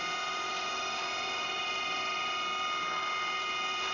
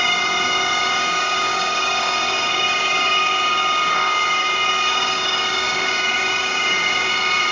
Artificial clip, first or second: second